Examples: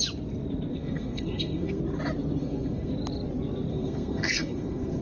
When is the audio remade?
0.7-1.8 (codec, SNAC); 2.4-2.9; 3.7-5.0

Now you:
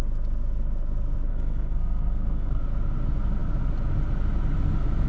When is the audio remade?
1.3-2.6 (codec, SNAC)

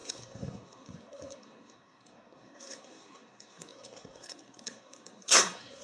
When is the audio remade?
0.0-5.8 (codec, SNAC)